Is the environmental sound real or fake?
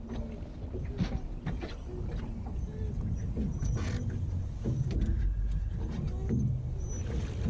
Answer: real